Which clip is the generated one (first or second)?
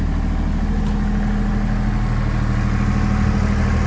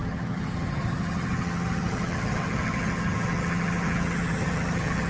second